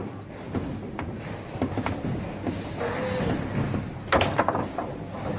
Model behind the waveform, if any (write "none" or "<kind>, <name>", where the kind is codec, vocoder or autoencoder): none